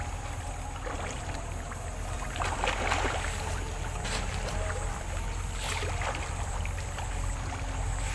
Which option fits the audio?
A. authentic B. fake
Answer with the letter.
A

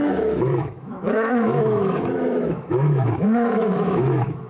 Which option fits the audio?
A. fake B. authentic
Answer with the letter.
A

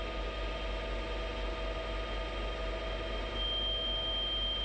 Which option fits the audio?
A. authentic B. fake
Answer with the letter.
A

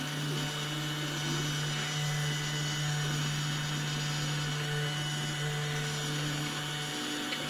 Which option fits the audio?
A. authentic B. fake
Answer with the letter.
A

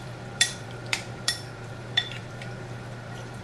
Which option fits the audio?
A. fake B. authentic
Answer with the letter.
A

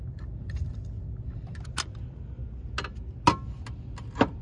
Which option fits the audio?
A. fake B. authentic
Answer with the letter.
B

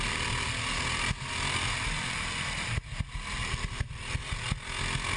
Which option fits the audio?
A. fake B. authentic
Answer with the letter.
B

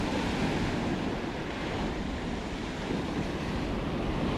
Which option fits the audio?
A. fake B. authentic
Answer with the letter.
B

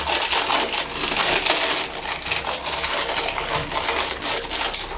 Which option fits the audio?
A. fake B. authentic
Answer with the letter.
B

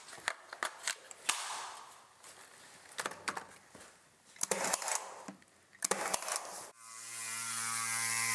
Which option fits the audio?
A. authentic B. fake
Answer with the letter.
A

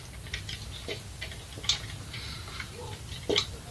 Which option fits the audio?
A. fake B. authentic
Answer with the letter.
B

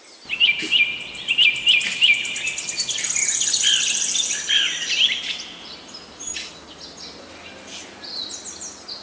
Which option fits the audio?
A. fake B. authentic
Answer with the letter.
B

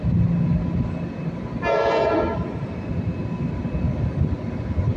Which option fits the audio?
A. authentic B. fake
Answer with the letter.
A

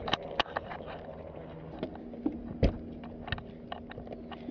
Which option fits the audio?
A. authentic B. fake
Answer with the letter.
A